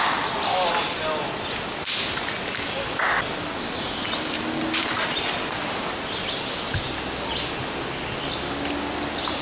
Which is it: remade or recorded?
recorded